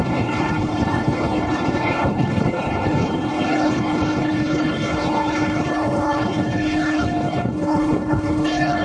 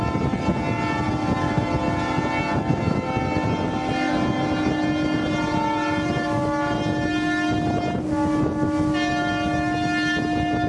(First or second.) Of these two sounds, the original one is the second